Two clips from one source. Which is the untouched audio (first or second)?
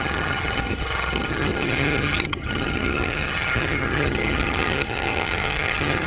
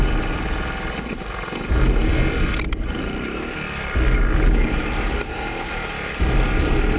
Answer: second